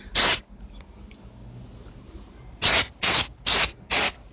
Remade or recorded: recorded